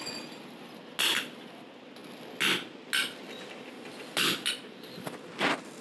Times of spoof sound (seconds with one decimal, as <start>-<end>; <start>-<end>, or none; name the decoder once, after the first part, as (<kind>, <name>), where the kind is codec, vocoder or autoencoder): none

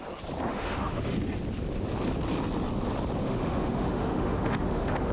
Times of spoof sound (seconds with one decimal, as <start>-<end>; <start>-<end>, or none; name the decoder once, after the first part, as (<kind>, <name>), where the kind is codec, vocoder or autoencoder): 0.5-1.1 (autoencoder, DAC-VAE); 3.2-5.1

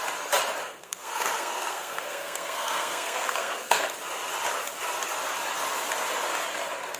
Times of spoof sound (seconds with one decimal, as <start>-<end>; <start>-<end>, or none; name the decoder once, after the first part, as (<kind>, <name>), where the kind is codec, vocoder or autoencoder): 0.6-3.9 (codec, SNAC)

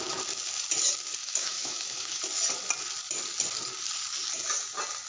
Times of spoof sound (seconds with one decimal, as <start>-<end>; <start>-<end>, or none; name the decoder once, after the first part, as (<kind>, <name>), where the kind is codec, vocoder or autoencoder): 1.2-2.2 (autoencoder, DAC-VAE)

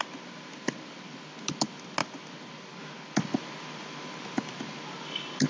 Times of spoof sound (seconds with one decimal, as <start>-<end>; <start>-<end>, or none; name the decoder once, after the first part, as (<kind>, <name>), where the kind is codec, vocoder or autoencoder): none

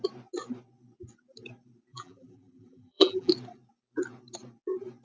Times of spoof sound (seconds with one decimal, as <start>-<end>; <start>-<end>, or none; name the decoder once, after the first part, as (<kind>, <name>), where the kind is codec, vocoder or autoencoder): 1.9-3.3 (vocoder, BigVGAN v2)

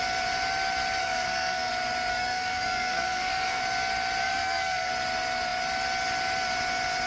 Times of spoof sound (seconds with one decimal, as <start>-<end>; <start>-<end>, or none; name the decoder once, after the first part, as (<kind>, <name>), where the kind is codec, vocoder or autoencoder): 1.0-1.7 (codec, SNAC); 2.1-3.6; 4.2-4.9

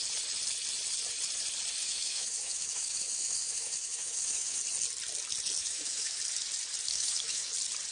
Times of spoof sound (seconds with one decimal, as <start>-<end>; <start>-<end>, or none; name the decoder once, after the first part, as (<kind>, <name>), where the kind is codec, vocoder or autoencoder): 1.8-4.6 (autoencoder, DAC-VAE); 5.6-6.2; 6.9-7.5